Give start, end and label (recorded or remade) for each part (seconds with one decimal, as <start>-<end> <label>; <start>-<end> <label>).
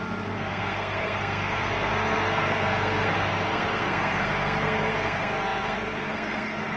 0.0-6.8 remade